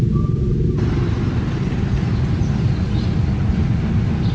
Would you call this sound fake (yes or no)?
no